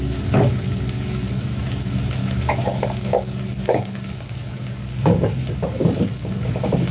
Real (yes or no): no